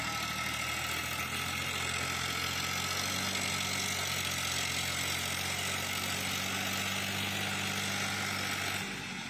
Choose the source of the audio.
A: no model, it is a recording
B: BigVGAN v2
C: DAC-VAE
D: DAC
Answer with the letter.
A